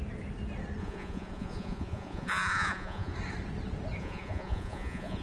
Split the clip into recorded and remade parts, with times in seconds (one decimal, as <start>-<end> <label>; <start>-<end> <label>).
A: 0.0-0.8 recorded; 0.8-3.1 remade; 3.1-4.0 recorded; 4.0-5.2 remade